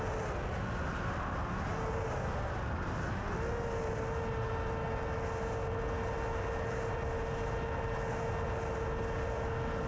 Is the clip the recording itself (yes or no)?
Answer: yes